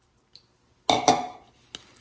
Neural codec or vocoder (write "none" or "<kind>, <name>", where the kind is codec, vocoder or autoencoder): none